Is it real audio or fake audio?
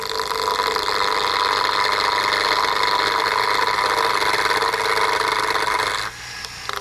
real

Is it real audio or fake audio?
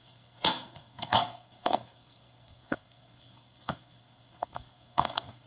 fake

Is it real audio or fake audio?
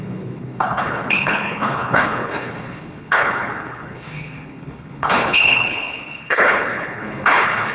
fake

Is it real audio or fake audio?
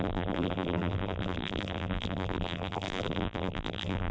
fake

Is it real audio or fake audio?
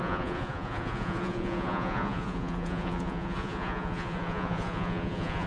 fake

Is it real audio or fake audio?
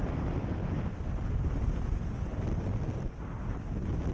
real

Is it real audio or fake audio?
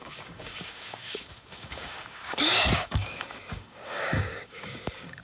fake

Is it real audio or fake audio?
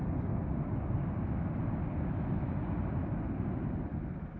real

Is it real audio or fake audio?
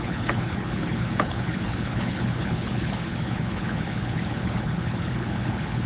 fake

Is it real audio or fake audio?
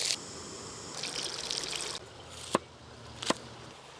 real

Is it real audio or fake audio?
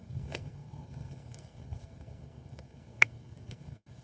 fake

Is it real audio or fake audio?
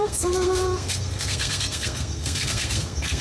fake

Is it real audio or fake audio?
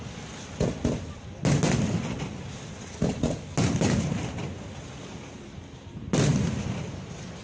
real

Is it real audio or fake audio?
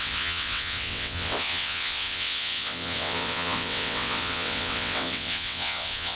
fake